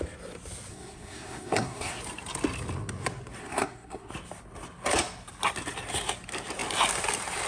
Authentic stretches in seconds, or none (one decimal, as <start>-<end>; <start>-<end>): 0.0-0.7; 2.0-3.4; 4.1-7.5